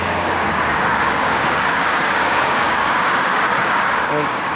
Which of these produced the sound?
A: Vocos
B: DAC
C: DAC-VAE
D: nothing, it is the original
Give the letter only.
B